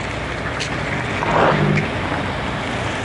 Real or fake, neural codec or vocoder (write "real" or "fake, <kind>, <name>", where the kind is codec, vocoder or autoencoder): real